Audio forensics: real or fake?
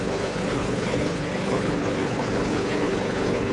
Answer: fake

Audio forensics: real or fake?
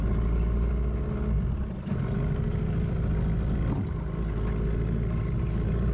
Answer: real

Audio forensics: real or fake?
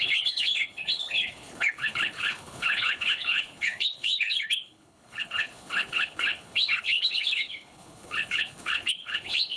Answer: fake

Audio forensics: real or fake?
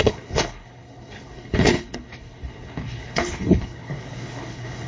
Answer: fake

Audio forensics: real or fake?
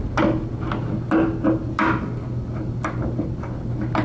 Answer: real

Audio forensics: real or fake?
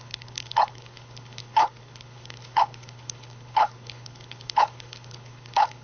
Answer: fake